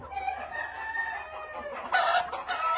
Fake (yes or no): no